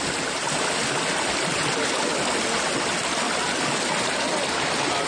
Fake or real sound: real